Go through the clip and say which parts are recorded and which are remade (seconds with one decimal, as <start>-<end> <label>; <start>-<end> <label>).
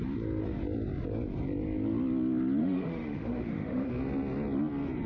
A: 0.0-2.6 recorded; 2.6-3.9 remade; 3.9-5.1 recorded